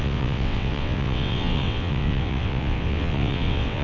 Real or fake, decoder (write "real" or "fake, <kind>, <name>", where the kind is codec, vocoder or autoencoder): fake, vocoder, WaveNeXt